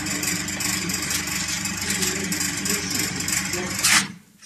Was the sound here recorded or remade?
remade